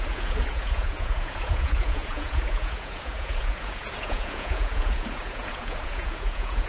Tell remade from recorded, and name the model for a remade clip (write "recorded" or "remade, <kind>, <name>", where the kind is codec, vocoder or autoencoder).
remade, vocoder, Vocos